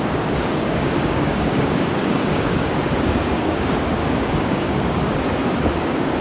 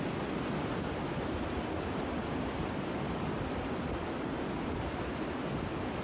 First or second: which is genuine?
second